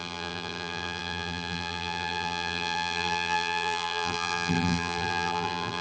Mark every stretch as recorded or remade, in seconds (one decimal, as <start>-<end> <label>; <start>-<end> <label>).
0.0-5.8 remade